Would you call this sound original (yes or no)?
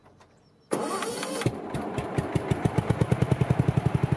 yes